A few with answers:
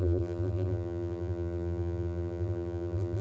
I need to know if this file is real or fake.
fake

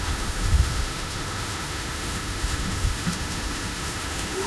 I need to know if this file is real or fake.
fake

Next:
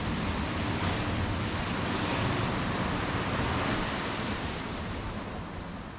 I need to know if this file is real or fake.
real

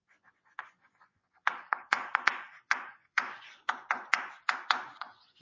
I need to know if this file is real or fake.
fake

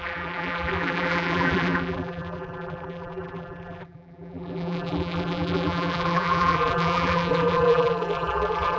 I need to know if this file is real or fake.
fake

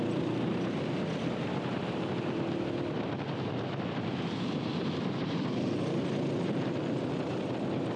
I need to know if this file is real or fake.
real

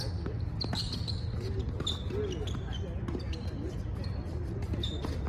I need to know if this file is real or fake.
real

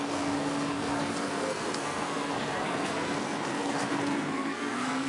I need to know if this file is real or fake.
fake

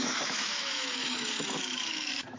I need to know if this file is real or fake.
fake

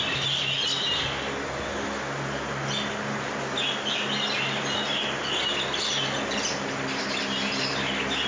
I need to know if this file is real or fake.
real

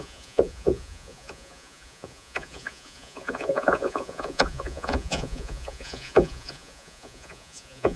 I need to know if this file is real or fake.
fake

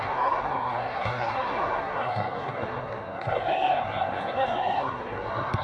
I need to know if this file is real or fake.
fake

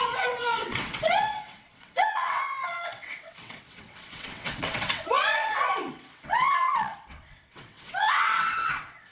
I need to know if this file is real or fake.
fake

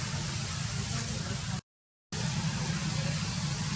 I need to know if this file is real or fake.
real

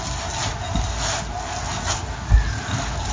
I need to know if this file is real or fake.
real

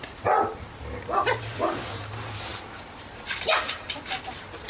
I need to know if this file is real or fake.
real